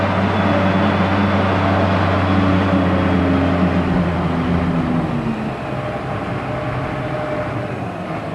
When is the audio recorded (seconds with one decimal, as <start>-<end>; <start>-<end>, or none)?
0.0-8.3

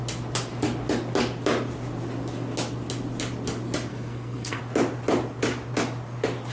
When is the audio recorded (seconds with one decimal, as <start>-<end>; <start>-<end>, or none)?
0.0-3.9; 4.6-6.5

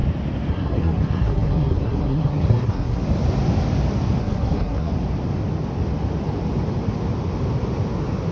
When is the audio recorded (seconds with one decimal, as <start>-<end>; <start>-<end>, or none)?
0.0-0.5; 3.0-4.2; 4.9-8.3

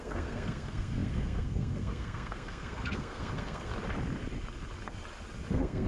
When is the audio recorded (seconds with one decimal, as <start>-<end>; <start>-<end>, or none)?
3.7-5.5

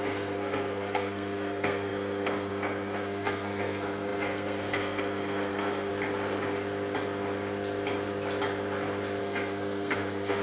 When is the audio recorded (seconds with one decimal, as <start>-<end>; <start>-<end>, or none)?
5.9-9.2